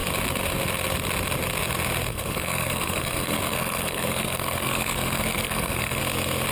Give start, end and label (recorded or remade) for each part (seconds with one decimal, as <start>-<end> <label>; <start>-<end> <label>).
0.0-2.1 recorded; 2.1-6.0 remade; 6.0-6.5 recorded